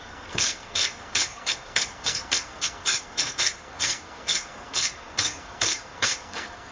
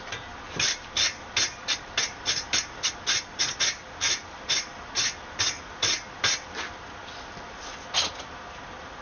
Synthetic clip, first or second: first